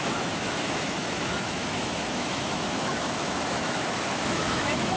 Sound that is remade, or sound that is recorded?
remade